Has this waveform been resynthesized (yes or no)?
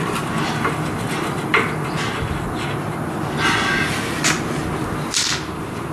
no